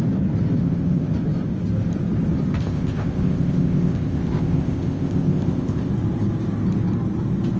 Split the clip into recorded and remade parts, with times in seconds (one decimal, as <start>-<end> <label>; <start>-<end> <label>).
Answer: 0.0-0.6 recorded; 0.6-1.1 remade; 1.1-2.5 recorded; 2.5-5.9 remade; 5.9-7.6 recorded